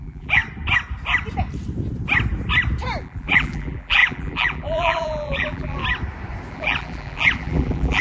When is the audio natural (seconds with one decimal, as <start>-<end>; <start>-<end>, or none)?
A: 0.4-3.0; 5.8-6.5